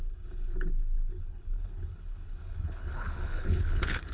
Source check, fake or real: fake